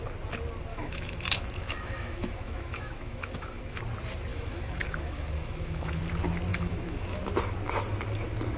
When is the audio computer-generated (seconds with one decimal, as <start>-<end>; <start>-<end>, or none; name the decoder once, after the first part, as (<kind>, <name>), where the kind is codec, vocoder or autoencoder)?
0.7-3.8 (autoencoder, DAC-VAE); 4.3-6.0; 6.5-7.2